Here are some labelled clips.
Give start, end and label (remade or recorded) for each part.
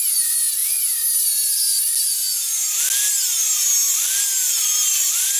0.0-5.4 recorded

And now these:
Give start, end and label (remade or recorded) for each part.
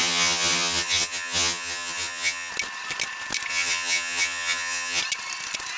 0.0-2.5 remade; 2.5-3.5 recorded; 3.5-5.0 remade; 5.0-5.8 recorded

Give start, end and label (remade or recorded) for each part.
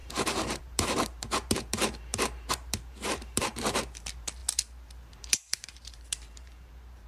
0.0-4.4 remade; 4.4-5.1 recorded; 5.1-7.1 remade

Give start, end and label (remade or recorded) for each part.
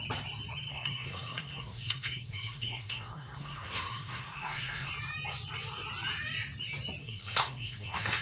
0.0-0.7 recorded; 0.7-4.9 remade; 4.9-7.0 recorded; 7.0-8.2 remade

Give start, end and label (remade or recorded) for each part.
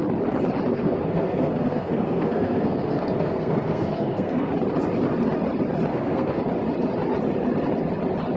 0.0-0.7 recorded; 0.7-4.5 remade; 4.5-5.9 recorded; 5.9-6.4 remade; 6.4-8.4 recorded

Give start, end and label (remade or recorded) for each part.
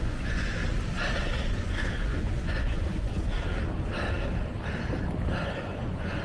0.0-0.6 remade; 0.6-1.5 recorded; 1.5-3.3 remade; 3.3-5.4 recorded; 5.4-6.2 remade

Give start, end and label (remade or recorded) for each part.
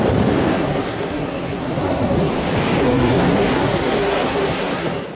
0.0-0.5 recorded; 0.5-2.3 remade; 2.3-2.8 recorded; 2.8-5.1 remade